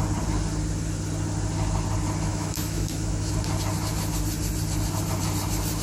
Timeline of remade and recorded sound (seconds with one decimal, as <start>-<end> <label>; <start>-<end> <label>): 0.0-2.3 recorded; 2.3-3.3 remade; 3.3-5.8 recorded